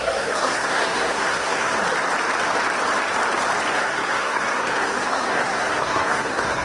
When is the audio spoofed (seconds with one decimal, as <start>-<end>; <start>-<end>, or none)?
0.0-1.7; 3.7-6.6